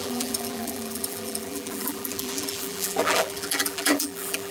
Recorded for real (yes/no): no